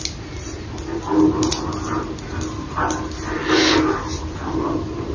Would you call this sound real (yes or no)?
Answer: yes